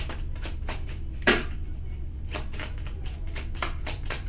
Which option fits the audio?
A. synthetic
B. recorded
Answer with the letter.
A